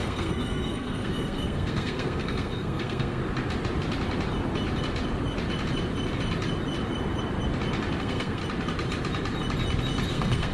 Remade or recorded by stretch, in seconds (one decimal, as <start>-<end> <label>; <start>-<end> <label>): 0.0-3.2 remade; 3.2-8.0 recorded; 8.0-8.4 remade; 8.4-10.1 recorded; 10.1-10.5 remade